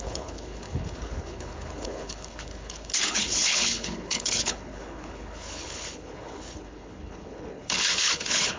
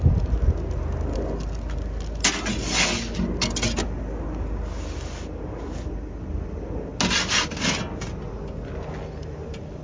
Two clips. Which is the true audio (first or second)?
second